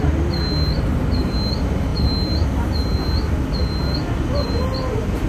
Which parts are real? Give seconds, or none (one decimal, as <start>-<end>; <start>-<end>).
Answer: 0.0-5.3